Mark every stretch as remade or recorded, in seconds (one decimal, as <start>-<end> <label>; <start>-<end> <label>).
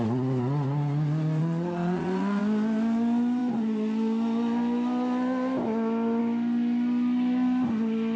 0.0-1.4 recorded; 1.4-2.4 remade; 2.4-8.2 recorded